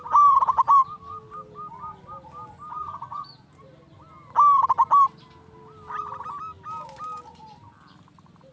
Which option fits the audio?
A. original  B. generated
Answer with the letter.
A